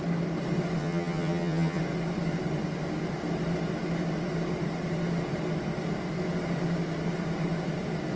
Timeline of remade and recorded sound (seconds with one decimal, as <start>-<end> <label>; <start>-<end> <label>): 0.0-0.8 recorded; 0.8-1.8 remade; 1.8-8.2 recorded